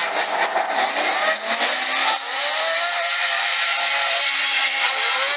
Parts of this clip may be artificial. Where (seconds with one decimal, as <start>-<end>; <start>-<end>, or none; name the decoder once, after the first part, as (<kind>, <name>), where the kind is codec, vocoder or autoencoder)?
2.4-5.0 (vocoder, BigVGAN v2)